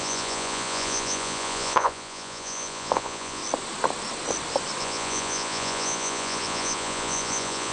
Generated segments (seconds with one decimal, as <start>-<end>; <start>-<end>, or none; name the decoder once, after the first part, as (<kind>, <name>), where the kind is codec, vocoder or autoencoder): 0.0-3.4 (vocoder, Vocos); 4.8-7.7